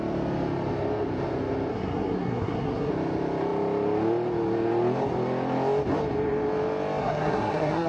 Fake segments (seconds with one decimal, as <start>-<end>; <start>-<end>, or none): 1.7-2.9; 7.0-7.9